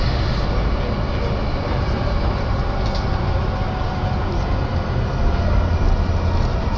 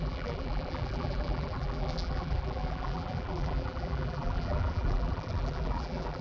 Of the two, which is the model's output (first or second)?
second